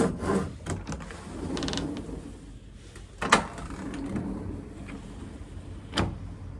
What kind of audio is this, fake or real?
real